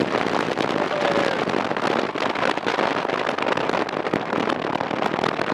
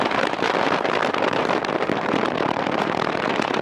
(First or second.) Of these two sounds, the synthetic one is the second